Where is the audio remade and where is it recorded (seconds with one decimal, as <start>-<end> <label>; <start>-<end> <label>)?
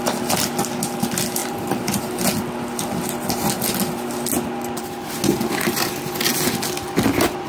0.0-1.4 recorded; 1.4-2.1 remade; 2.1-7.5 recorded